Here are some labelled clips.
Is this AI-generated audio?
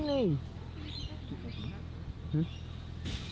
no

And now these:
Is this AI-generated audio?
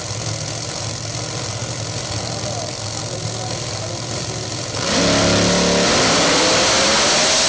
no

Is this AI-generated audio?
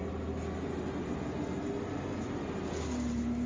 no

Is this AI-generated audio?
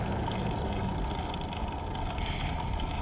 no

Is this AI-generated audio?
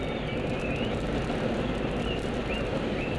no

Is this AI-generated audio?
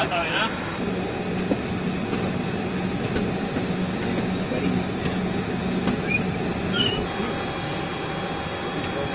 no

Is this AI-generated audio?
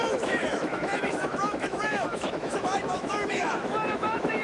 yes